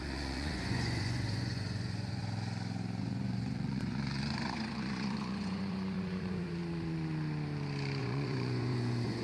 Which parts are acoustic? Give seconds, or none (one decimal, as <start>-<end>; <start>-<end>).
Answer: 2.2-3.0; 6.6-8.0